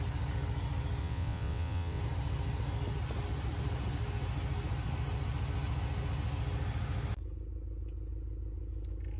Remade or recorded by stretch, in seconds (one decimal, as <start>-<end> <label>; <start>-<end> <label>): 0.0-1.0 recorded; 1.0-2.0 remade; 2.0-9.2 recorded